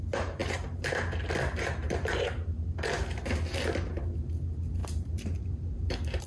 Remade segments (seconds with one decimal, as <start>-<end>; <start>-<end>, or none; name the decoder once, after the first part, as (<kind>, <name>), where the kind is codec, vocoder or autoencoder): 4.8-6.3 (vocoder, BigVGAN v2)